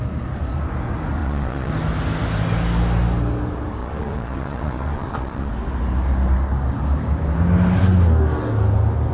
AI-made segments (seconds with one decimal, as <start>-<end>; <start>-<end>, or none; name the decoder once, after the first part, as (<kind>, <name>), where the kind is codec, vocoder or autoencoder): 1.2-1.7 (vocoder, Vocos); 3.8-5.5